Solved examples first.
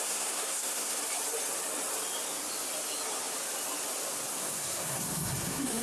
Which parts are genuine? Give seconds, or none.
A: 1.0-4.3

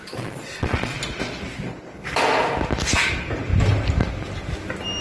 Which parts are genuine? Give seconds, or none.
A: 1.0-5.0

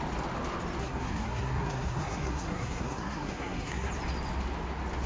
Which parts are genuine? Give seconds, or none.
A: 0.0-0.8; 3.9-5.1

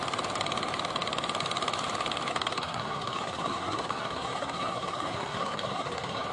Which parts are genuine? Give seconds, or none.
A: 0.0-2.3